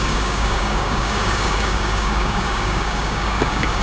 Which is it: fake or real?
fake